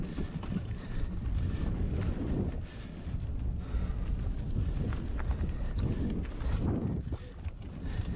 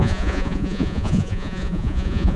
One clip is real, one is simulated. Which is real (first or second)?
first